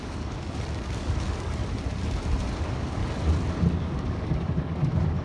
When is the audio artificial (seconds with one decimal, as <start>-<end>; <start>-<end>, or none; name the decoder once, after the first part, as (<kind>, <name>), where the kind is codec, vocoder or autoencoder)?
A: 0.0-1.6 (codec, DAC); 2.6-3.0; 3.7-5.2